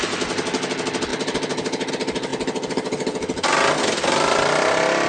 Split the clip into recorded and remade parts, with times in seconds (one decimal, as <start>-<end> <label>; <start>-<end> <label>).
0.0-5.1 recorded